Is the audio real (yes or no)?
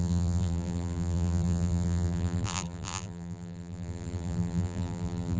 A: no